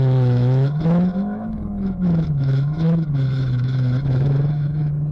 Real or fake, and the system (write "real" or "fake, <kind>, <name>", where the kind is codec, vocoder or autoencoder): fake, autoencoder, DAC-VAE